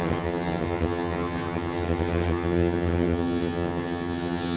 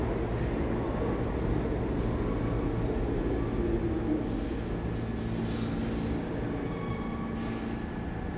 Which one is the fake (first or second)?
first